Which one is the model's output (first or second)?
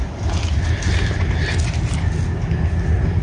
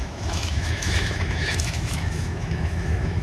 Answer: second